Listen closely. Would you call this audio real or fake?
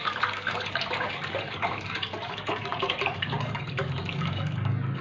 fake